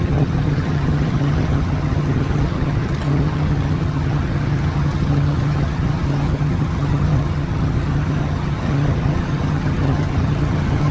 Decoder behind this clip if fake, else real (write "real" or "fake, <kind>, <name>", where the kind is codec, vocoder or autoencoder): fake, vocoder, HiFi-GAN